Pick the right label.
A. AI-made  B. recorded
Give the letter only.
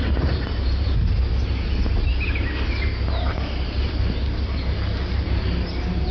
B